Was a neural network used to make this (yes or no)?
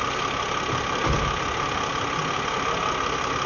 no